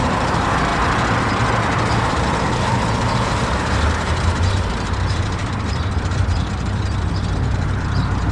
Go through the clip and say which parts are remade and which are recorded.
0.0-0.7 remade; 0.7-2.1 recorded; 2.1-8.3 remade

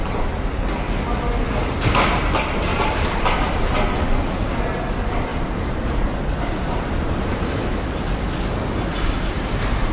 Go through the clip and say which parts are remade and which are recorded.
0.0-2.7 recorded; 2.7-3.5 remade; 3.5-5.3 recorded; 5.3-8.0 remade; 8.0-9.9 recorded

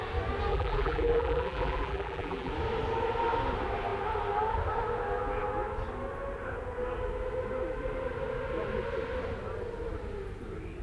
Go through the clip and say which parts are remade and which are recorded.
0.0-0.5 recorded; 0.5-2.5 remade; 2.5-10.8 recorded

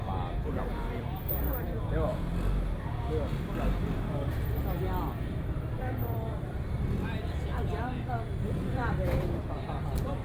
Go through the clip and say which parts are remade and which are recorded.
0.0-2.1 remade; 2.1-3.3 recorded; 3.3-10.2 remade

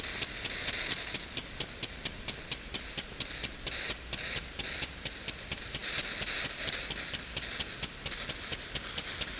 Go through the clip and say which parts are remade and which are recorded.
0.0-9.4 recorded